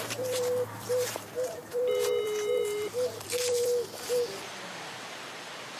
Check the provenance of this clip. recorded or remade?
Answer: remade